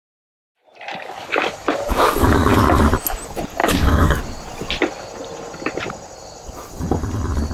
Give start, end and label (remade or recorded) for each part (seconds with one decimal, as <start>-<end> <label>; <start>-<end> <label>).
0.0-0.9 recorded; 0.9-2.8 remade; 2.8-3.6 recorded; 3.6-4.2 remade; 4.2-7.5 recorded

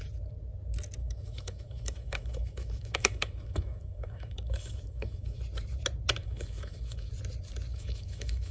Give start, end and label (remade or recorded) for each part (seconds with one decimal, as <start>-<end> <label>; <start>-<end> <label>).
0.0-1.0 recorded; 1.0-5.4 remade; 5.4-6.2 recorded; 6.2-7.1 remade; 7.1-7.7 recorded; 7.7-8.5 remade

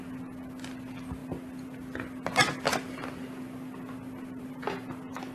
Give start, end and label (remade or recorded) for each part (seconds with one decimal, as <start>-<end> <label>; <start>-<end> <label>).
0.0-5.3 recorded